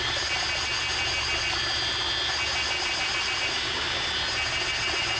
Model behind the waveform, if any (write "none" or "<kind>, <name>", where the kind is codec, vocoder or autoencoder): none